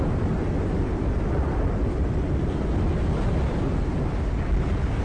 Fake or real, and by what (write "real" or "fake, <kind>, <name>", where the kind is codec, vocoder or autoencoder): real